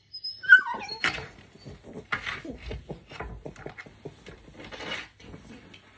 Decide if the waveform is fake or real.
real